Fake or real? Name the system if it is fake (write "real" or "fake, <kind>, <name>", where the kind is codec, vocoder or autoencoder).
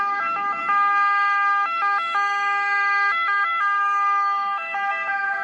fake, autoencoder, DAC-VAE